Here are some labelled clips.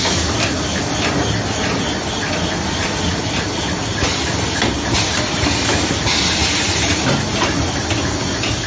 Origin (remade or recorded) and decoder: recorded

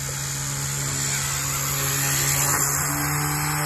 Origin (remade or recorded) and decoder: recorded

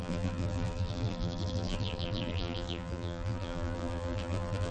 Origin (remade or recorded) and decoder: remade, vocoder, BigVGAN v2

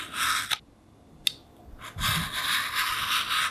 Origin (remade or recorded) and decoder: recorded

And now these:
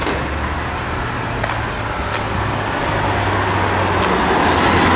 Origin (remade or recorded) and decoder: recorded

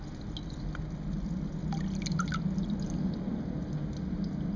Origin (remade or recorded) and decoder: recorded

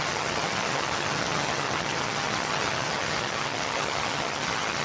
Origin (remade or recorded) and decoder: remade, vocoder, HiFi-GAN